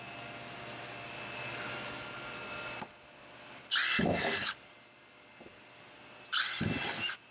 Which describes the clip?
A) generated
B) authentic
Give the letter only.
B